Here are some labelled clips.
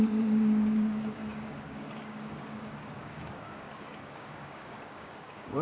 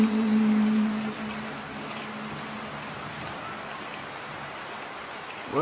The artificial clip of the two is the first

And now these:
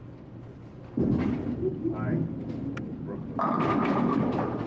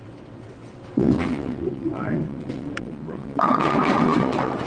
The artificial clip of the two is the second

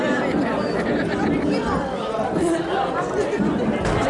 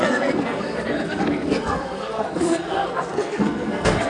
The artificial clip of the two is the second